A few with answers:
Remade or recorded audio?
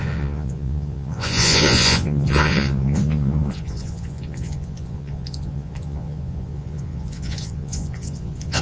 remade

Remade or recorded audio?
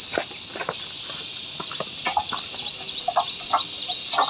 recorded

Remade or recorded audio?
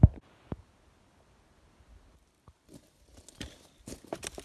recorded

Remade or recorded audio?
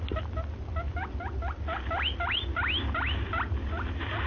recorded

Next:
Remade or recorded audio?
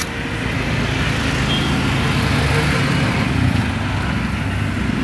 recorded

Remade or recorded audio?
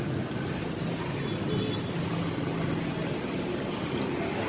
recorded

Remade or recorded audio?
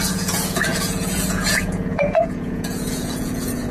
remade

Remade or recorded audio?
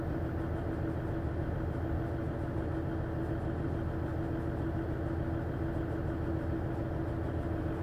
recorded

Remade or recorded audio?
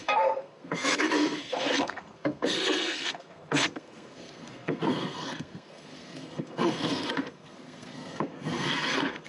remade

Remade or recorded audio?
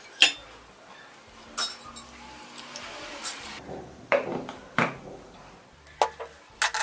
recorded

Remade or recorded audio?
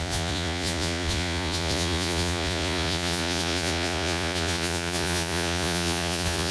remade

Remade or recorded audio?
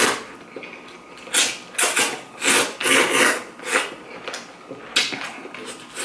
recorded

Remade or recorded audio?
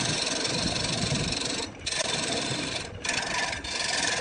remade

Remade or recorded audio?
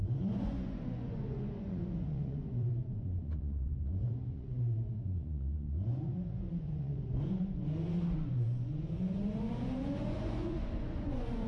remade